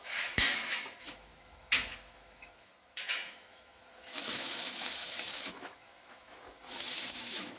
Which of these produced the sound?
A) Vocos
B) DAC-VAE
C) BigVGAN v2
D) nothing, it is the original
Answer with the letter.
B